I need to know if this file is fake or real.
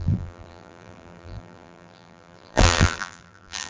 fake